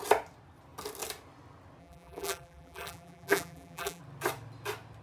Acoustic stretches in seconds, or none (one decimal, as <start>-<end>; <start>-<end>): 0.0-1.8; 4.0-5.0